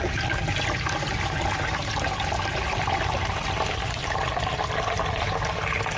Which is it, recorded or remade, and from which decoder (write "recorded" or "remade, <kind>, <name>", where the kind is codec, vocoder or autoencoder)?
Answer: recorded